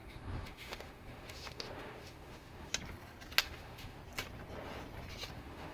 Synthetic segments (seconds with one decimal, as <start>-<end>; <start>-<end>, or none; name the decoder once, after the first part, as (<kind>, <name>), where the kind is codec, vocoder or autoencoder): 0.0-2.7 (autoencoder, DAC-VAE); 3.4-4.0; 5.3-5.7